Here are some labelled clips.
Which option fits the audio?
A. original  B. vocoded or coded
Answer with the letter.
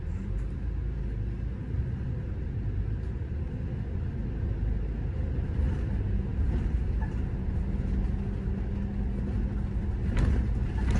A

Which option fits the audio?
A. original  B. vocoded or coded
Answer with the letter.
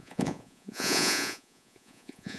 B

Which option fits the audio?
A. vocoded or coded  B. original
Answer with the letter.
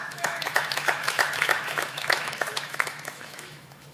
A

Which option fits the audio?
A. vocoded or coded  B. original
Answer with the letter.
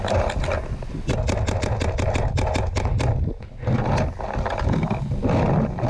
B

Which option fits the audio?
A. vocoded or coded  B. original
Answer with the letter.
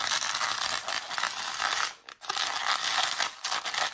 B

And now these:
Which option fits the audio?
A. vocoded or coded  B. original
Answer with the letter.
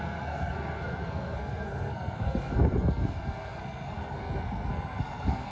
A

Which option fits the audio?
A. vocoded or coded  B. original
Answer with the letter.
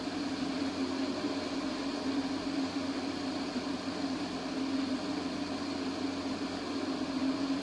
A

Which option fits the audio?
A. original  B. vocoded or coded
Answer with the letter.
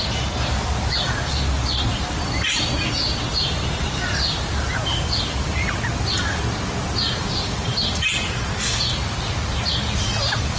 A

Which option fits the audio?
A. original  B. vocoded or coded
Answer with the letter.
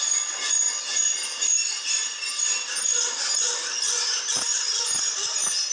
A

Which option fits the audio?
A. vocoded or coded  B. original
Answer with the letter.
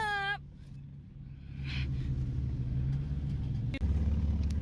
B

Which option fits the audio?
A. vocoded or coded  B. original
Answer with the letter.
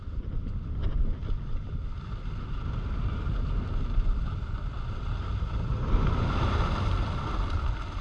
B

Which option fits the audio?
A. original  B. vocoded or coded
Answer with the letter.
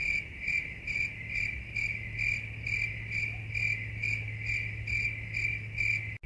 A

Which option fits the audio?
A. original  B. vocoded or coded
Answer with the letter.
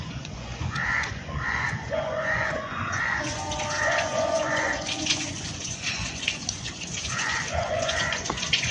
B